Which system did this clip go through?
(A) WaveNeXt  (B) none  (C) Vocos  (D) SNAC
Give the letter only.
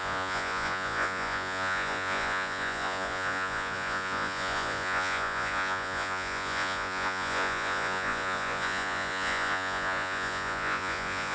C